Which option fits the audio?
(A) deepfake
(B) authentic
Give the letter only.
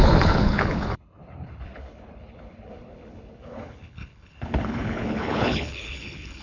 A